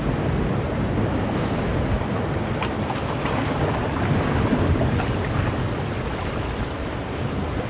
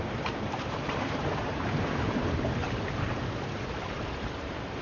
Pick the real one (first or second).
first